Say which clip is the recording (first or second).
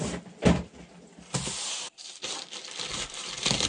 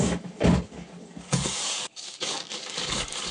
first